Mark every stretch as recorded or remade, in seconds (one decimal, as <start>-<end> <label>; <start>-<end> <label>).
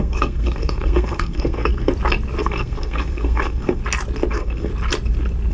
0.0-1.9 remade; 1.9-2.4 recorded; 2.4-3.8 remade; 3.8-4.3 recorded; 4.3-4.7 remade; 4.7-5.5 recorded